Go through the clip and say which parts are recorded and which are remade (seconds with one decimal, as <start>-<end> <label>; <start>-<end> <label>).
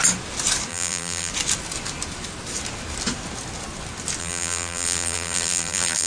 0.0-0.7 recorded; 0.7-1.3 remade; 1.3-4.2 recorded; 4.2-6.1 remade